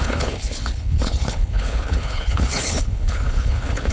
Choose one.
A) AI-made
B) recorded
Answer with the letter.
A